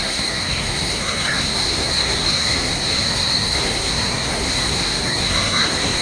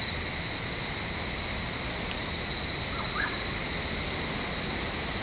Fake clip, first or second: first